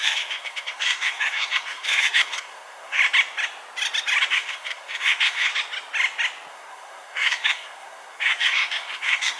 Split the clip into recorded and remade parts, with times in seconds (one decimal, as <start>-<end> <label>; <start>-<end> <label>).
0.0-3.0 remade; 3.0-4.3 recorded; 4.3-5.5 remade; 5.5-6.5 recorded; 6.5-9.4 remade